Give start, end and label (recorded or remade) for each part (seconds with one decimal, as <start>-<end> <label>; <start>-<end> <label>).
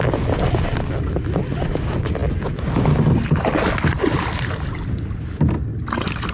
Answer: 0.0-6.3 recorded